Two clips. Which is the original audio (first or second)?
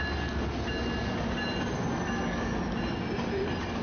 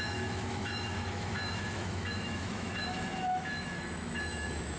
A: first